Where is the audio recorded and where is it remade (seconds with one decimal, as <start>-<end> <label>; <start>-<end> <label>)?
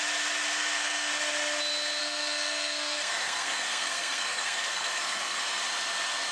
0.0-0.6 recorded; 0.6-1.1 remade; 1.1-2.0 recorded; 2.0-5.6 remade; 5.6-6.3 recorded